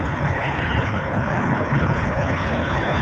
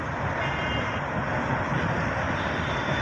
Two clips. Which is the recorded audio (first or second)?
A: second